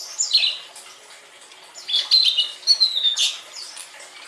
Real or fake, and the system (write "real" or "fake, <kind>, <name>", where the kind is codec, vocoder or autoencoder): real